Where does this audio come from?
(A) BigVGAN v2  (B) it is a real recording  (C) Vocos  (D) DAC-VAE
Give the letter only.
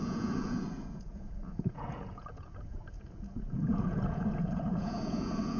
C